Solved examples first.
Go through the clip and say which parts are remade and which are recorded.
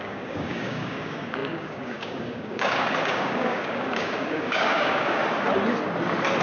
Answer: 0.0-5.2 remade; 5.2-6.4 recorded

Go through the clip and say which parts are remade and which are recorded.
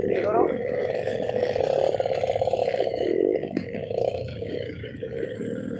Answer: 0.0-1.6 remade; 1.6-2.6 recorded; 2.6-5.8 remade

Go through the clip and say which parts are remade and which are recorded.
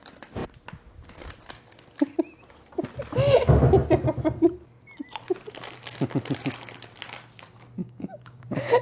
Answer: 0.0-7.8 recorded; 7.8-8.4 remade; 8.4-8.8 recorded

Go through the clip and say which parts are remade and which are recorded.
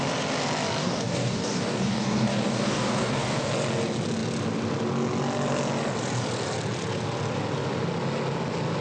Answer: 0.0-0.8 recorded; 0.8-3.5 remade; 3.5-8.8 recorded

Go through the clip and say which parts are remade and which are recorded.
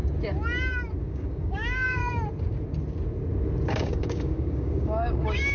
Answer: 0.0-1.0 recorded; 1.0-2.0 remade; 2.0-3.7 recorded; 3.7-5.5 remade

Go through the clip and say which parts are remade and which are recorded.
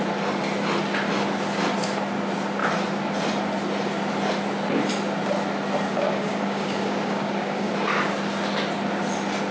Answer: 0.0-5.9 recorded; 5.9-7.7 remade; 7.7-9.5 recorded